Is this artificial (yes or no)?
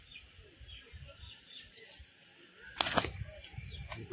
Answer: no